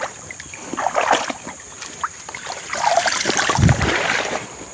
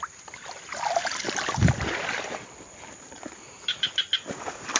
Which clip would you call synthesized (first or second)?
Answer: first